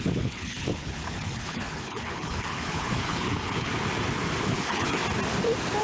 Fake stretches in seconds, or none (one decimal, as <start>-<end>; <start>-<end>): 0.0-3.7; 4.4-5.0